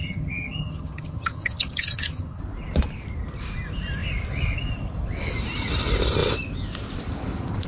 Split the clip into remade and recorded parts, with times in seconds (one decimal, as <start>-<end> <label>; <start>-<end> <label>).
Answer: 0.0-2.4 remade; 2.4-7.7 recorded